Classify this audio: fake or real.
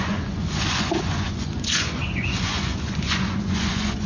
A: fake